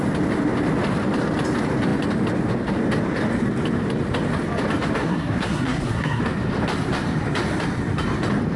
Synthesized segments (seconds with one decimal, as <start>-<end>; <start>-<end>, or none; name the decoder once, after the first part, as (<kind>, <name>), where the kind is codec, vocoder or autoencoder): 5.0-6.2 (codec, SNAC)